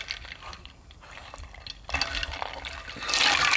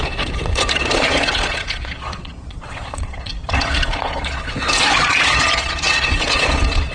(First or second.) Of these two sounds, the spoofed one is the second